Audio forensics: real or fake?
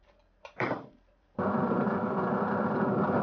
fake